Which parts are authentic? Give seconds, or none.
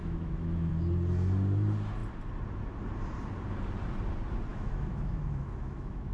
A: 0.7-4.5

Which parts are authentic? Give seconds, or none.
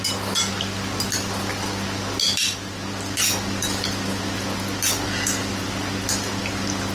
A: 0.0-6.9